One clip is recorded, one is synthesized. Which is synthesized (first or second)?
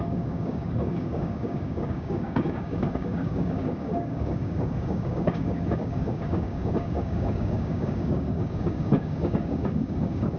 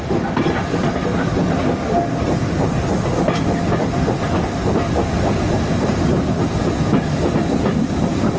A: first